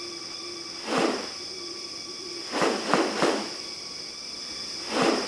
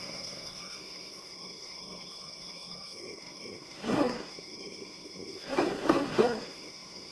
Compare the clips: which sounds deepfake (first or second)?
second